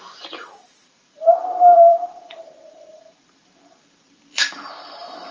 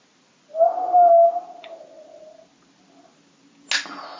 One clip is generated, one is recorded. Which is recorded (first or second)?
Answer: second